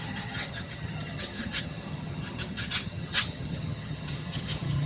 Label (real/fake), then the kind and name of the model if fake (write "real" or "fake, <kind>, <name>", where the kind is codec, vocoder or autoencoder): fake, vocoder, HiFi-GAN